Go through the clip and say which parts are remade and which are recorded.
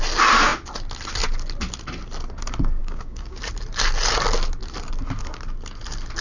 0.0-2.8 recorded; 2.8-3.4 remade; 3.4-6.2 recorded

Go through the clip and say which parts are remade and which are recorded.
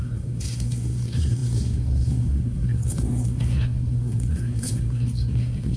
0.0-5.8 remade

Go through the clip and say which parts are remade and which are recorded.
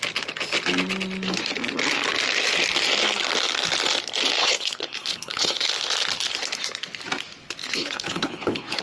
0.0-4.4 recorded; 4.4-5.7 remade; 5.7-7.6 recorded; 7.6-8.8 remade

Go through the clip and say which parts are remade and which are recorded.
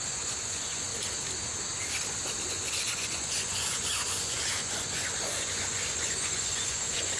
0.0-0.9 remade; 0.9-2.5 recorded; 2.5-7.2 remade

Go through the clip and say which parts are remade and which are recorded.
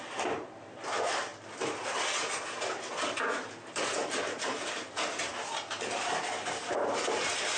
0.0-1.3 remade; 1.3-2.4 recorded; 2.4-7.6 remade